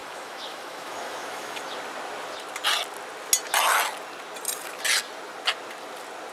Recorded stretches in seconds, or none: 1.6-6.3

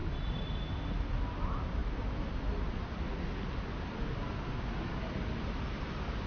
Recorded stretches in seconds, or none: 0.0-6.3

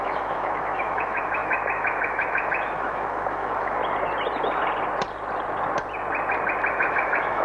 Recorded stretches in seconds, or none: 3.8-6.7

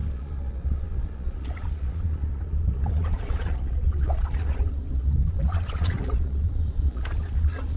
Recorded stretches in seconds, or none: none

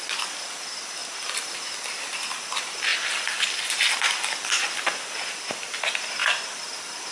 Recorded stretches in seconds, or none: 0.0-7.1

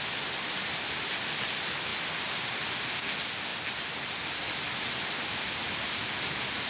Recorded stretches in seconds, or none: 0.0-6.7

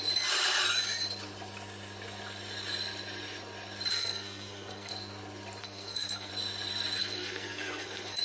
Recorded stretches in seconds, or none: 0.0-3.9; 4.9-5.6; 6.3-7.0